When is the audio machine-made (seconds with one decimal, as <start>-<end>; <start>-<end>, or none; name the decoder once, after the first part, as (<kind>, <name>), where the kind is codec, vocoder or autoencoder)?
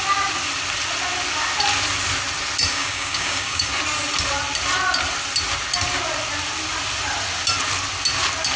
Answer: 2.7-3.7 (codec, DAC)